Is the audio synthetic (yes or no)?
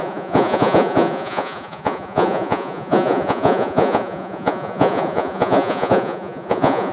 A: yes